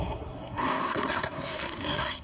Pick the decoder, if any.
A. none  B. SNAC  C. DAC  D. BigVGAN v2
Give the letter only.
B